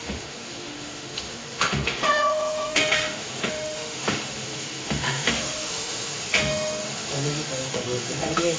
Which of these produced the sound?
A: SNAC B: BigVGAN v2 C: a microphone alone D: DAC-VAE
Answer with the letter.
D